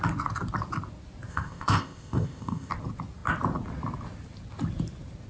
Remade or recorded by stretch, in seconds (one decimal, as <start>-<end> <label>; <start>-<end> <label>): 0.0-1.3 recorded; 1.3-2.7 remade; 2.7-5.3 recorded